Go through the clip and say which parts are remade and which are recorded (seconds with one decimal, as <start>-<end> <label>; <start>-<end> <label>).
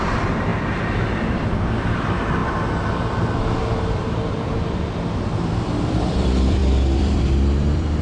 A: 0.0-2.4 remade; 2.4-3.6 recorded; 3.6-8.0 remade